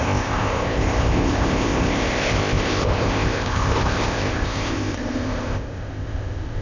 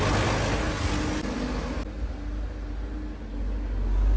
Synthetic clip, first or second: first